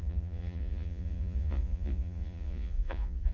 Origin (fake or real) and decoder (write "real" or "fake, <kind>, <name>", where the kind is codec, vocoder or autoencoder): fake, vocoder, Vocos